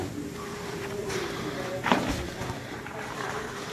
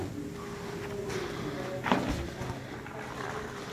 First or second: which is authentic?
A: second